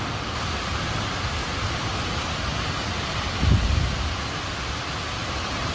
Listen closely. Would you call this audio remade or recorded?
recorded